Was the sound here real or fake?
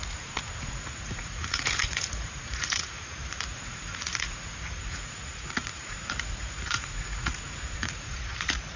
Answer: fake